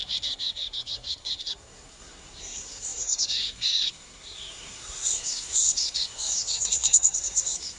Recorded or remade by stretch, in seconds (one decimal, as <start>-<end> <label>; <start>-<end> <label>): 0.0-7.8 remade